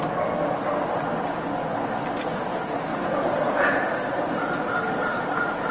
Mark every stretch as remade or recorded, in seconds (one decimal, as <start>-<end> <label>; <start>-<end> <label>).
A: 0.0-2.9 recorded; 2.9-4.1 remade; 4.1-5.7 recorded